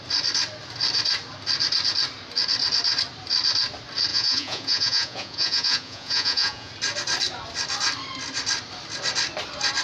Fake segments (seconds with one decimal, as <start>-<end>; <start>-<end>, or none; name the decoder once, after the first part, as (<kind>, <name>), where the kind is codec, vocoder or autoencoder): 4.1-6.7 (vocoder, Vocos)